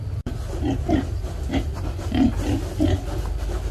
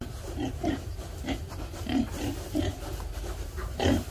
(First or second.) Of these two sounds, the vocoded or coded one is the second